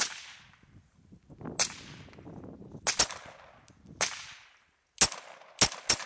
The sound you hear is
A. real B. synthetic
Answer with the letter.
A